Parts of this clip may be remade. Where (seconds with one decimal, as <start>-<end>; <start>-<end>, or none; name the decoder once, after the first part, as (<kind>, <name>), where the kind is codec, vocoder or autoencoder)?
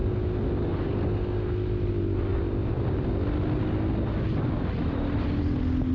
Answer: none